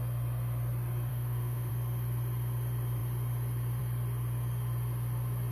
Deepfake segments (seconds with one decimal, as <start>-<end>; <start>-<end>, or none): 1.1-1.7